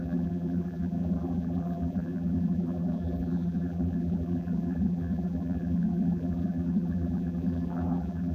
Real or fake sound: fake